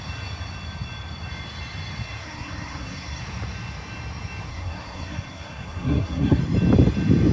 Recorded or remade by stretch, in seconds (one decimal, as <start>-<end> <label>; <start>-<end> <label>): 0.0-2.2 recorded; 2.2-3.2 remade; 3.2-4.5 recorded; 4.5-6.4 remade; 6.4-7.3 recorded